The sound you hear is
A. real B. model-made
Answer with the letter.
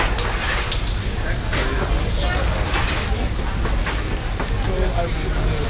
A